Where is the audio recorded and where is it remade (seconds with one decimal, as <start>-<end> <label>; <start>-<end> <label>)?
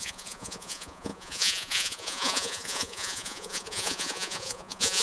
0.0-5.0 remade